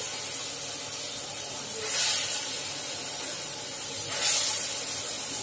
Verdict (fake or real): real